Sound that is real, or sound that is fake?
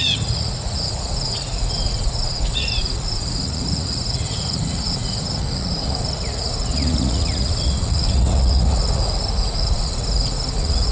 fake